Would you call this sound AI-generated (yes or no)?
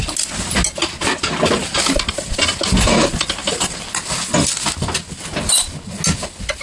no